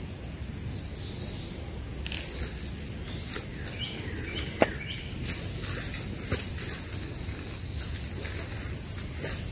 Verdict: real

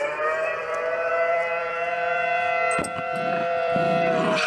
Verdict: fake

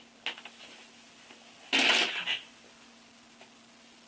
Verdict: real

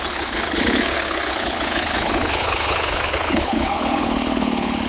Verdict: fake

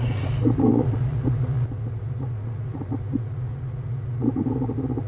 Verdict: fake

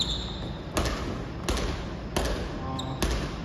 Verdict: real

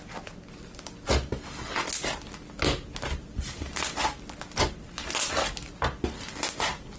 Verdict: real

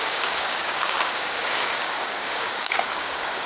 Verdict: fake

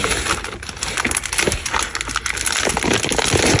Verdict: real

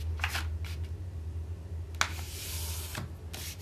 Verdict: real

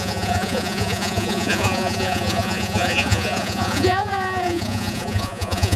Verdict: fake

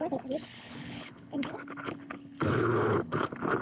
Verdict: fake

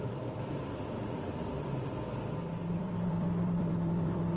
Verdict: fake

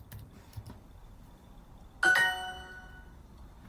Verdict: real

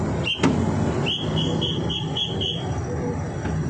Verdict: real